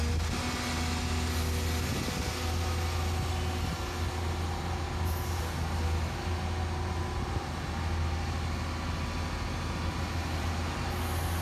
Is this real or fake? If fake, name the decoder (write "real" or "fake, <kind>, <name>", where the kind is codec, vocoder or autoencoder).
real